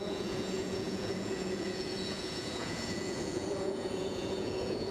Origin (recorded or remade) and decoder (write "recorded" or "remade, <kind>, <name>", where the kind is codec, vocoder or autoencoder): remade, vocoder, Vocos